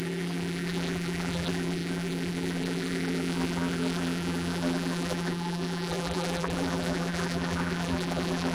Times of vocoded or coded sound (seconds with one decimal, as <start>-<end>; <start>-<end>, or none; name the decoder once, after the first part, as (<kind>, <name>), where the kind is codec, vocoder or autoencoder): 0.0-8.5 (vocoder, BigVGAN v2)